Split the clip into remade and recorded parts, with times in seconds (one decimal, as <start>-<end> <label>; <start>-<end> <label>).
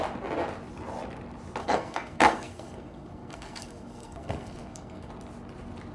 0.0-1.6 recorded; 1.6-5.1 remade; 5.1-5.9 recorded